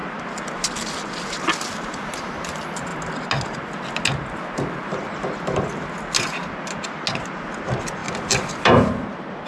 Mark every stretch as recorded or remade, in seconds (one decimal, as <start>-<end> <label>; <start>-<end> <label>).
0.0-1.4 remade; 1.4-8.0 recorded; 8.0-9.5 remade

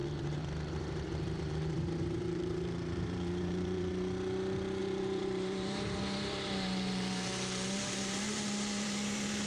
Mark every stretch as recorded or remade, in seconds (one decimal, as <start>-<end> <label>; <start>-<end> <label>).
0.0-3.9 remade; 3.9-4.8 recorded; 4.8-9.5 remade